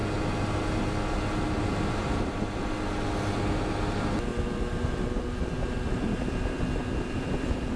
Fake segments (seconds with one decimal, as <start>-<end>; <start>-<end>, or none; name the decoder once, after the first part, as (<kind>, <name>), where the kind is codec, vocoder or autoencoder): 2.0-2.6 (vocoder, BigVGAN v2); 4.3-7.8